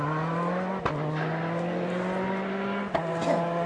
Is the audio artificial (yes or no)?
no